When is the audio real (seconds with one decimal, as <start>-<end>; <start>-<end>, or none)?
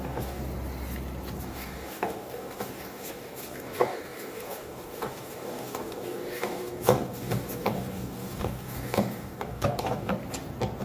0.4-1.4; 10.1-10.8